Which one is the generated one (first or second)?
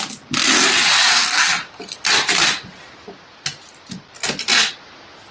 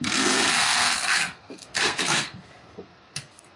second